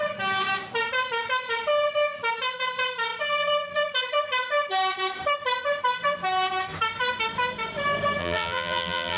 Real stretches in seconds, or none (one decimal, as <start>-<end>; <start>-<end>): 0.0-8.2